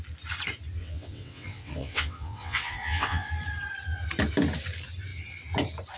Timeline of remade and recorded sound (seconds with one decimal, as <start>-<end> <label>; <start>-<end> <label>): 0.0-0.8 recorded; 0.8-3.3 remade; 3.3-6.0 recorded